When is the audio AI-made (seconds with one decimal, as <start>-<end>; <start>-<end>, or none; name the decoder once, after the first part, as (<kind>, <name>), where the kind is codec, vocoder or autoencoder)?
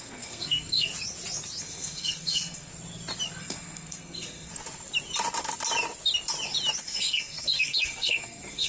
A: 0.0-0.9 (codec, SNAC); 1.6-2.7; 3.4-4.5; 6.8-8.7